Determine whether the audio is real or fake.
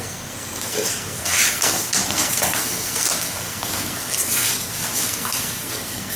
fake